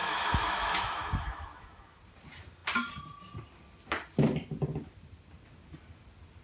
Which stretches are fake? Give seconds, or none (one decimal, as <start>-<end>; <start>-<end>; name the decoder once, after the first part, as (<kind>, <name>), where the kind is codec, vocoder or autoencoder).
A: 0.0-2.0 (autoencoder, DAC-VAE)